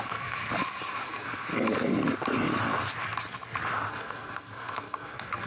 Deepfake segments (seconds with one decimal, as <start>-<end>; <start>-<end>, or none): 0.0-0.4; 1.1-1.5; 3.9-5.5